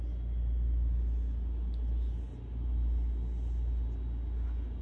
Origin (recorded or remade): recorded